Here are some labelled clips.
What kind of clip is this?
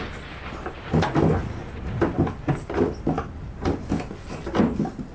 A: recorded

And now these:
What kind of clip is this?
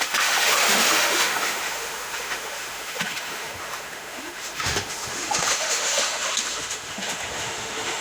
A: remade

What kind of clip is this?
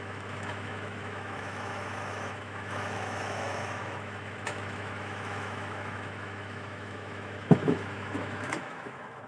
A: remade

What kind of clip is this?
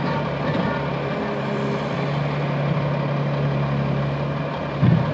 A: recorded